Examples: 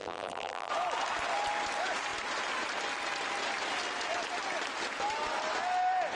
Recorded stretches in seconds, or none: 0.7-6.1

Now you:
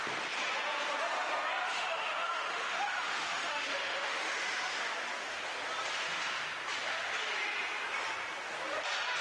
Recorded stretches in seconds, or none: 0.0-1.7; 4.7-9.2

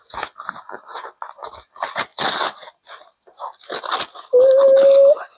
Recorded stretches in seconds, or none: 0.0-5.4

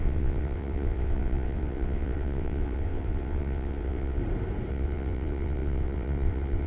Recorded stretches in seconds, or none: 4.2-4.7